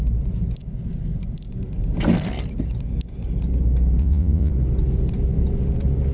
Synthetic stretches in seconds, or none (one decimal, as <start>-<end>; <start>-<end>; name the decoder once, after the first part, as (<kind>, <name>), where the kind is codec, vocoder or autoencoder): 4.0-4.5 (vocoder, Vocos)